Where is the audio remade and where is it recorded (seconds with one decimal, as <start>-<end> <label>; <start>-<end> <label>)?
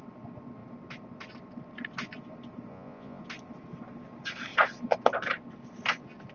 0.0-2.7 recorded; 2.7-3.2 remade; 3.2-6.3 recorded